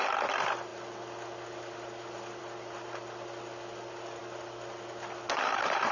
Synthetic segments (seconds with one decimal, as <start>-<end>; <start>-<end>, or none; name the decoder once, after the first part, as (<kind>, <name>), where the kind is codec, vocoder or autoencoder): none